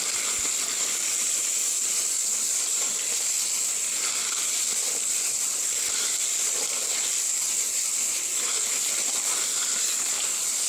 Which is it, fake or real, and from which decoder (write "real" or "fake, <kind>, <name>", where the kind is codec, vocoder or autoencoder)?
real